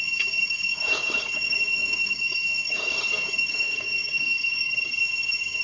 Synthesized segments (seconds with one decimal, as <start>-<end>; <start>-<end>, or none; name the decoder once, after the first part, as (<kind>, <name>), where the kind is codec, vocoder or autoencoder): 0.0-5.6 (codec, DAC)